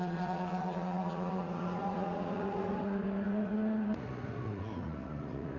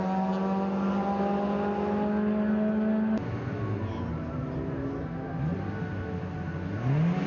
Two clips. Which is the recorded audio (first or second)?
second